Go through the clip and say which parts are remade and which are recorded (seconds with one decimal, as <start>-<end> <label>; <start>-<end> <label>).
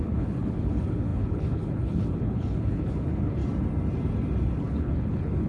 0.0-3.4 remade; 3.4-4.6 recorded; 4.6-5.5 remade